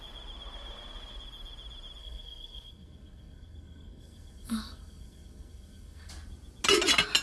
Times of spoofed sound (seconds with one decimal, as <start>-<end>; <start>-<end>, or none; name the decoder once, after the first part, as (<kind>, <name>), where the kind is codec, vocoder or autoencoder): 2.0-6.1 (codec, SNAC)